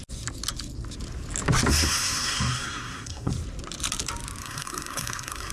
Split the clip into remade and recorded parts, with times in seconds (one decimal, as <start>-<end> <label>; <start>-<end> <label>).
0.0-1.7 recorded; 1.7-3.3 remade; 3.3-4.4 recorded; 4.4-5.5 remade